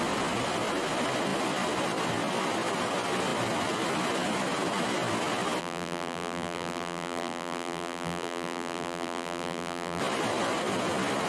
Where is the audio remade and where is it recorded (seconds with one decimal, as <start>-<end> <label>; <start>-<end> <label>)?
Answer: 0.0-5.6 recorded; 5.6-10.0 remade; 10.0-11.3 recorded